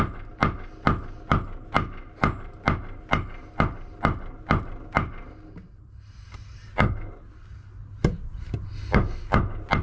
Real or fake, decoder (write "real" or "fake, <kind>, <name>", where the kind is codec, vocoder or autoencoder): real